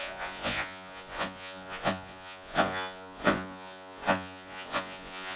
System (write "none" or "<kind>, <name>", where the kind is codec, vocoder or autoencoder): vocoder, Vocos